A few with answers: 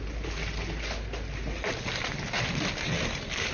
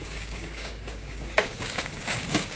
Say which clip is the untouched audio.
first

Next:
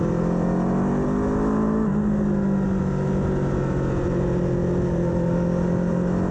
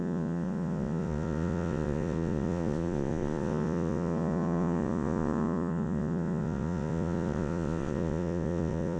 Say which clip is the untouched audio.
first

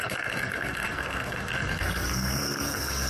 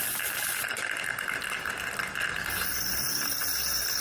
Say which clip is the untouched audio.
second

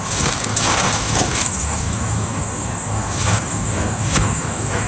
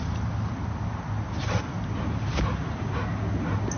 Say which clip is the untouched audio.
second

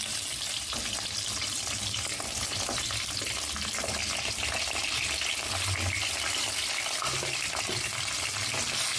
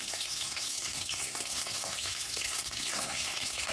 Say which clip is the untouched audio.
first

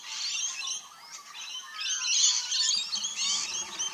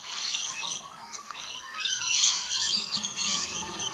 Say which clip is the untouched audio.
first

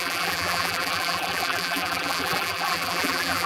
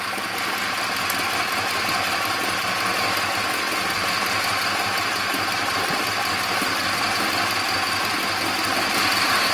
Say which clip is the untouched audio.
second